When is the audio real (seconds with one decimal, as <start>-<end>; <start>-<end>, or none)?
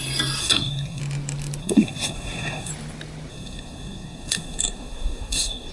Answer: 0.0-0.4; 1.0-1.6; 2.7-3.3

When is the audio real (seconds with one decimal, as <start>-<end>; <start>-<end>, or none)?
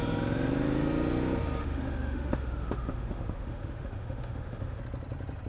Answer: 0.0-1.6; 4.8-5.5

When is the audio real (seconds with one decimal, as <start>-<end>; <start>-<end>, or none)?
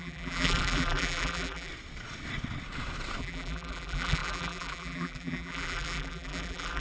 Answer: 1.7-3.2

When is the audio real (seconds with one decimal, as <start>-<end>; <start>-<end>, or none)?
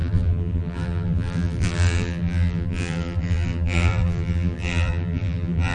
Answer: none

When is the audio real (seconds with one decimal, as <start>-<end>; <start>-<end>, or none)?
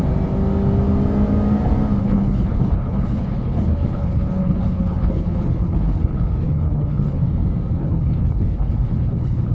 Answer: 0.0-2.0; 7.2-7.8